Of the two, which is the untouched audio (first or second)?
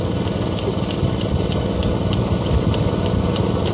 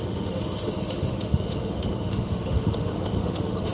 first